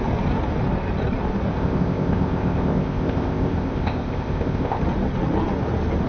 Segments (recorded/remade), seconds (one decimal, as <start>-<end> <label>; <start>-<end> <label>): 0.0-1.5 recorded; 1.5-4.8 remade; 4.8-6.1 recorded